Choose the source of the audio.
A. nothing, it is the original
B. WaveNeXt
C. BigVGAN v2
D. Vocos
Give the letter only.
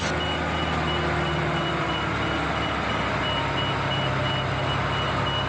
A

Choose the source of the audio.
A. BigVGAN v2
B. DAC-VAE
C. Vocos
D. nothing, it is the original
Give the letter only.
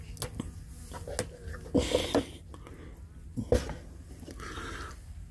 D